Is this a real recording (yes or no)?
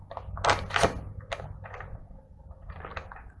yes